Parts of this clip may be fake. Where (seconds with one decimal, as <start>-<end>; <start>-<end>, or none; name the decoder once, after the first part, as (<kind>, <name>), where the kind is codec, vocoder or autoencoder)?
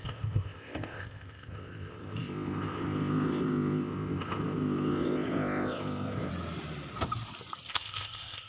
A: 0.0-6.3 (codec, ZipCodec); 7.7-8.5